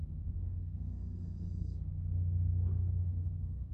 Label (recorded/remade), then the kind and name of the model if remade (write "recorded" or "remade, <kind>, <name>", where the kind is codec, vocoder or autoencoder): remade, codec, SNAC